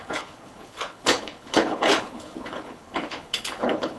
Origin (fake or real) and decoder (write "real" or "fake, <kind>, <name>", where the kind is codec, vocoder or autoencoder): fake, codec, HILCodec